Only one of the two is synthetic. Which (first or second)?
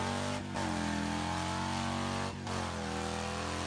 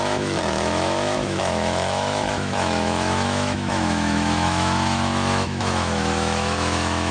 second